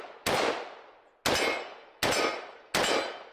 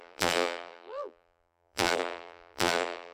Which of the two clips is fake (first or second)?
second